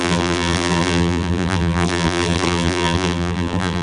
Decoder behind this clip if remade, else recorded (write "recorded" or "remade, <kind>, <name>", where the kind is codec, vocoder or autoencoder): remade, vocoder, BigVGAN v2